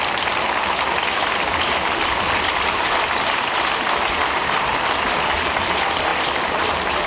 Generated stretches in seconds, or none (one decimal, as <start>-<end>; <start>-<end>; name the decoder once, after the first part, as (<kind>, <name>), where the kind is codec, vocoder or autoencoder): 1.2-3.5 (vocoder, BigVGAN v2)